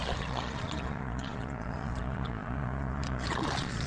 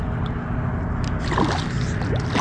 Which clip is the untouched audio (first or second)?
second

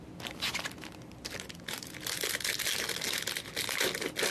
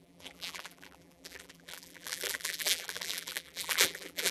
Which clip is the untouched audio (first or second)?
first